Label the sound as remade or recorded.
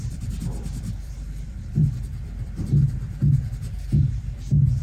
remade